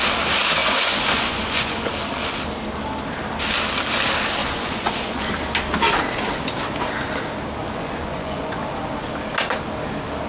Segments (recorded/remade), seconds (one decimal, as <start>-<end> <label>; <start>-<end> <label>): 0.0-0.6 recorded; 0.6-1.9 remade; 1.9-4.4 recorded; 4.4-5.3 remade; 5.3-7.6 recorded; 7.6-8.6 remade; 8.6-10.3 recorded